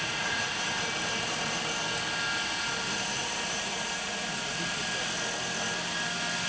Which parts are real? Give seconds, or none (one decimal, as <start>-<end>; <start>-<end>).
0.7-3.6; 4.3-6.5